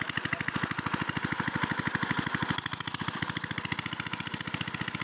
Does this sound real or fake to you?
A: real